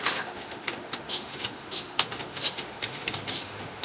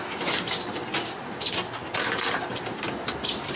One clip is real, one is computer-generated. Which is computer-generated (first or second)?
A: first